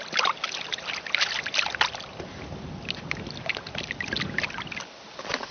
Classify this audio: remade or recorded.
recorded